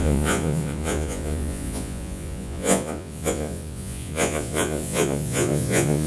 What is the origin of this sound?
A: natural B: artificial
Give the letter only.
B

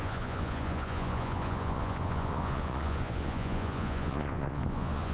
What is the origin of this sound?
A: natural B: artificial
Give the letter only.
B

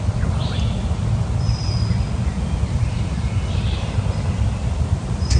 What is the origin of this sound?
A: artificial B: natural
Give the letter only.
B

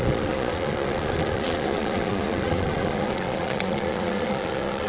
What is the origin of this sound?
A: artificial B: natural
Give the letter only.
A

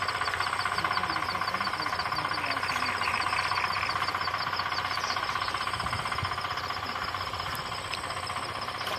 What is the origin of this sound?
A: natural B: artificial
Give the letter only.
A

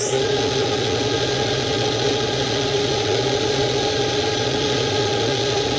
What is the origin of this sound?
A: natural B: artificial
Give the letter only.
B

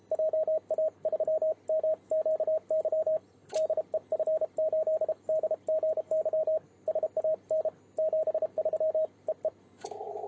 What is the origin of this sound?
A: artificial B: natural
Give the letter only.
B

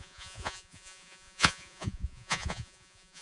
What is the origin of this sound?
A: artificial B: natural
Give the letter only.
A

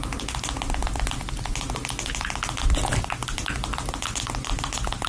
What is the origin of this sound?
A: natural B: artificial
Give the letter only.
A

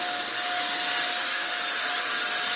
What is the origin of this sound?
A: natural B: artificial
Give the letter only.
A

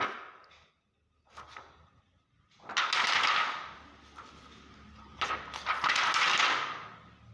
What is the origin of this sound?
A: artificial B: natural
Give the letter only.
B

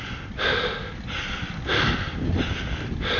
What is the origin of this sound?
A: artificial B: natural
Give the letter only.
B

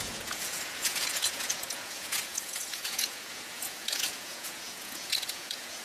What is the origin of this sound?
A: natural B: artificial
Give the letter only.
B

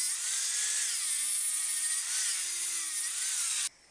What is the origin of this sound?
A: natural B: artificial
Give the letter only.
A